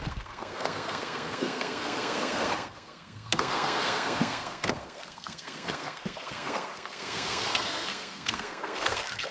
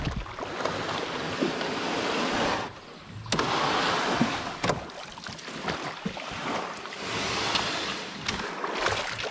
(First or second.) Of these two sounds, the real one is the second